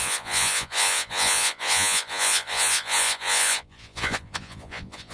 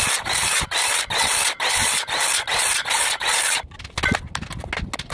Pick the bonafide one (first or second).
second